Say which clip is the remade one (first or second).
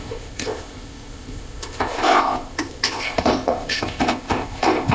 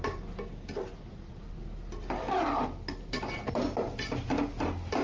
first